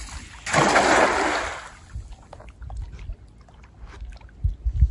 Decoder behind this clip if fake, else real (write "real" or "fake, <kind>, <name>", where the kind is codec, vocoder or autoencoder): real